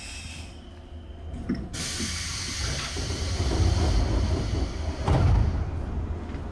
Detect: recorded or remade recorded